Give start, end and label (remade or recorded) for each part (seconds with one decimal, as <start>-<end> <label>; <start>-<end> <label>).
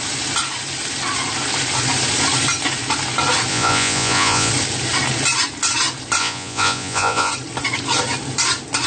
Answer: 0.0-3.5 recorded; 3.5-4.5 remade; 4.5-6.2 recorded; 6.2-7.3 remade; 7.3-8.9 recorded